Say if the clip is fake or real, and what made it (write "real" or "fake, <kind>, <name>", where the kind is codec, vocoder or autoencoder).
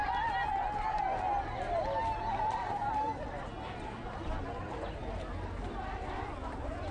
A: real